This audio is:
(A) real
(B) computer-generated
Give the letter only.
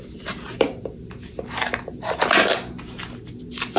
A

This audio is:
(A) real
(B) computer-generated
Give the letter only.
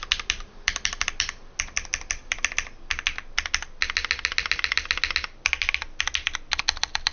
A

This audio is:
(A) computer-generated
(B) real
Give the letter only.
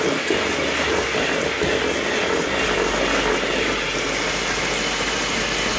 B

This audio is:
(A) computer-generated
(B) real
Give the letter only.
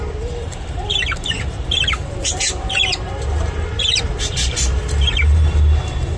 A